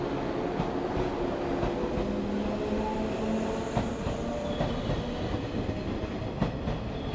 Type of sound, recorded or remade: recorded